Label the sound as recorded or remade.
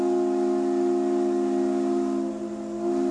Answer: recorded